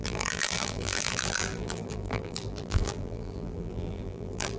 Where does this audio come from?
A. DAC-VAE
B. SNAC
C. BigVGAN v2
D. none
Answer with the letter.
C